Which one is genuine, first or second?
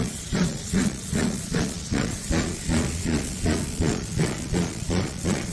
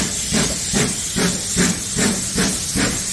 second